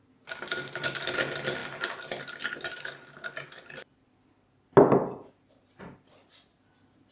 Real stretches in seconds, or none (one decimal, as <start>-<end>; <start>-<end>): 0.0-7.1

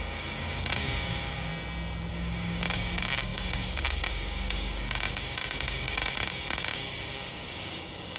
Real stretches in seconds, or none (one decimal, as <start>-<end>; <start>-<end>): 1.5-2.1

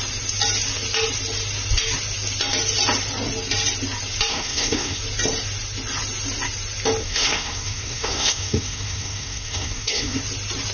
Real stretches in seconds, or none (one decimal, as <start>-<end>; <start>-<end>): 0.0-4.3; 5.0-7.0; 10.2-10.7

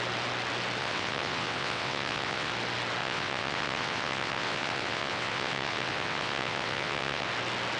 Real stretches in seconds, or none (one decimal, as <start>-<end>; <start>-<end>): 0.0-0.8; 2.5-3.0; 7.3-7.8

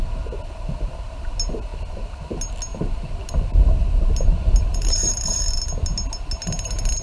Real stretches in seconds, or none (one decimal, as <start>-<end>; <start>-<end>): 0.0-4.7; 5.4-7.0

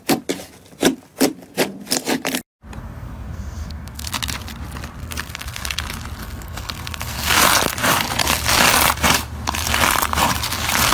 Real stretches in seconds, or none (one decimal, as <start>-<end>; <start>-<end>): 0.0-2.8; 4.1-5.0; 5.8-6.2; 7.4-10.9